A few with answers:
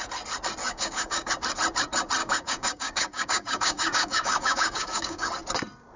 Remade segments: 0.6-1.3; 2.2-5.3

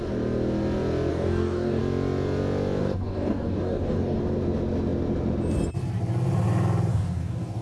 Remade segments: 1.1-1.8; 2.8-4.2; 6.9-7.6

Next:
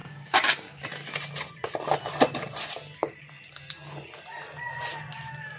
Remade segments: 0.0-0.8